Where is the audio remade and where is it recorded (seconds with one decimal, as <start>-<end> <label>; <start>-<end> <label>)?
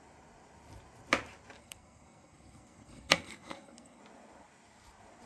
0.0-1.6 recorded; 1.6-4.0 remade; 4.0-5.3 recorded